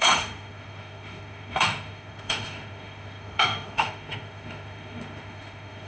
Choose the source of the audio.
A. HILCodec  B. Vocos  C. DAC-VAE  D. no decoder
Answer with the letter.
C